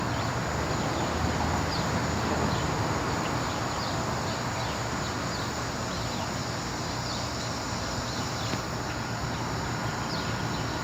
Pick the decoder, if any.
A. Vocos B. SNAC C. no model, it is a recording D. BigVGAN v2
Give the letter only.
C